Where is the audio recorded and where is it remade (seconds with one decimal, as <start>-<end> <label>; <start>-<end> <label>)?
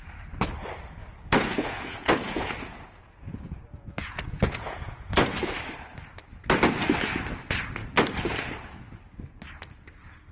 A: 0.0-1.0 recorded; 1.0-5.4 remade; 5.4-10.3 recorded